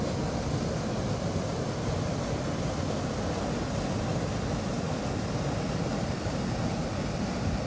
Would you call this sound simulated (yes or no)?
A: no